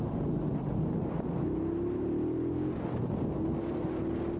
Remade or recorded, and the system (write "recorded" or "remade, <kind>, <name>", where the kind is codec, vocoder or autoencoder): recorded